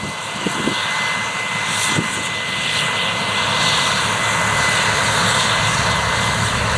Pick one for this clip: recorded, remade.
recorded